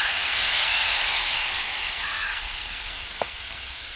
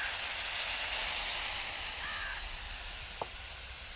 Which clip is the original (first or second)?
second